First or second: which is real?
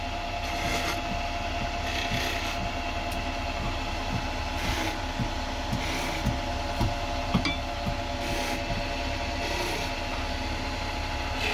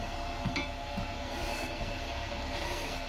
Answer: first